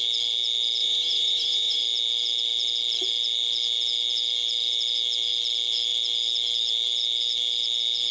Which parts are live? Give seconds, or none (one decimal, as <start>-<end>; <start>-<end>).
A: 0.0-0.8; 1.8-8.1